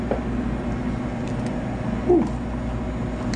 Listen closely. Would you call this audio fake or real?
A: real